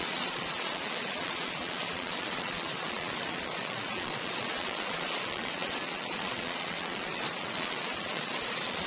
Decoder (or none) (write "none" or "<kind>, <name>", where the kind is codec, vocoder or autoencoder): vocoder, Vocos